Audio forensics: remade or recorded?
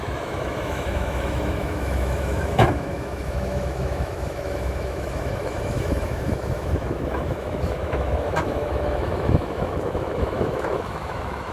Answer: remade